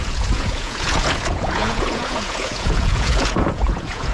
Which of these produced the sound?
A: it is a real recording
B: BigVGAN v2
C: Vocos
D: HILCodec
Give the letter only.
C